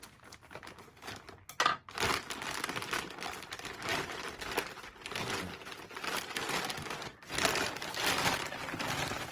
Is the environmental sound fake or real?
real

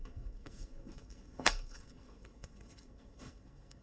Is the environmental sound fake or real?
fake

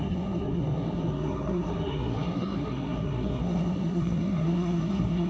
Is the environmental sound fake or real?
fake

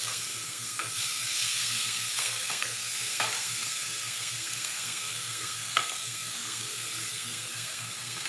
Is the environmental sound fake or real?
fake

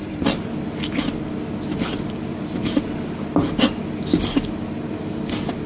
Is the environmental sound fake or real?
real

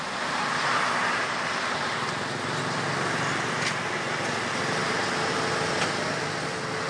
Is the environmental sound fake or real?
real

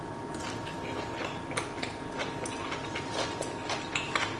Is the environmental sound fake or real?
real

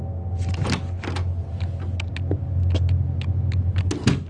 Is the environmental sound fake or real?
real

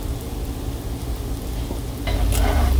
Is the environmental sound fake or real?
real